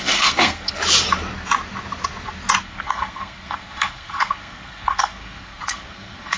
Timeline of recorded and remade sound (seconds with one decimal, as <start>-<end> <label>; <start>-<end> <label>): 0.0-0.8 remade; 0.8-2.6 recorded; 2.6-6.4 remade